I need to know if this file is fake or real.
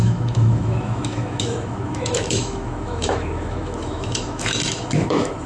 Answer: fake